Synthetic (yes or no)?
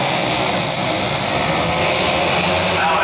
no